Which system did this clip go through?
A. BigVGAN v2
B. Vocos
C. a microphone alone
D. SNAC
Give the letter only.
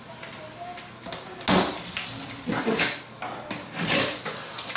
C